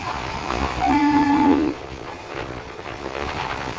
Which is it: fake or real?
fake